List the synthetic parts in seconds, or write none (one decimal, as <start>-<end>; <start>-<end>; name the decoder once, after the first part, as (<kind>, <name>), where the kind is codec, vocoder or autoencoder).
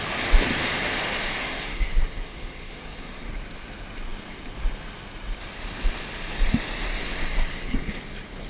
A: 1.4-3.3 (codec, SNAC); 7.0-8.0